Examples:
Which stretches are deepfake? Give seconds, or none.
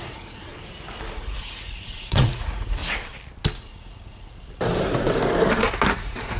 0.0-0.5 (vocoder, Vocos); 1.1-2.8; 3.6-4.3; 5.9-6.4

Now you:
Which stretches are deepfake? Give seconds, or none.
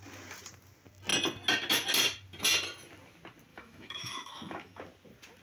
3.5-4.8 (autoencoder, DAC-VAE)